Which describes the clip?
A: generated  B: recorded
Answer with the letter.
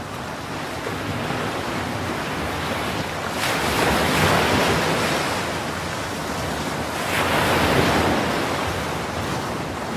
B